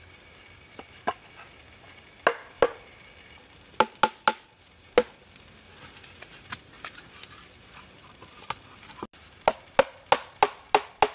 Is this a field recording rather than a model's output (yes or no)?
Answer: yes